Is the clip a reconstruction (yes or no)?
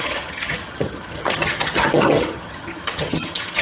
yes